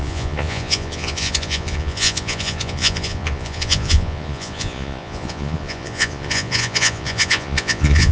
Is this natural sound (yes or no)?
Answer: no